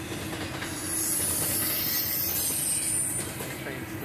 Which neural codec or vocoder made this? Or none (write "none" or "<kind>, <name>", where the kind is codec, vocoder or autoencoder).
none